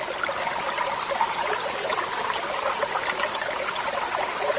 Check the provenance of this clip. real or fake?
real